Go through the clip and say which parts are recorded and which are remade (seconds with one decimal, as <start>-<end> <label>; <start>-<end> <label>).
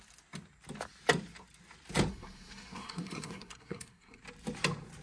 0.0-2.1 recorded; 2.1-4.2 remade; 4.2-5.0 recorded